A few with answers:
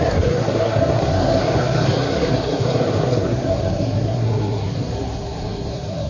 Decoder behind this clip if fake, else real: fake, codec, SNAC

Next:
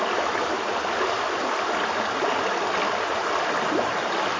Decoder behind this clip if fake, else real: real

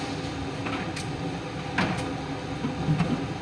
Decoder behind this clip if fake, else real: real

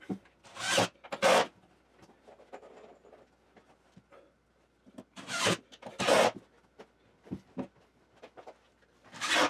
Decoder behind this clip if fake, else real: real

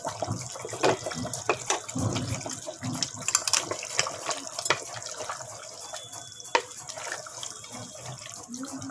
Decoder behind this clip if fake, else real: real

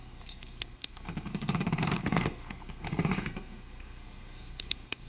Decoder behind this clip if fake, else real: fake, codec, SNAC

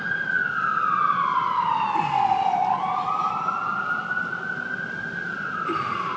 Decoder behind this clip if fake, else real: real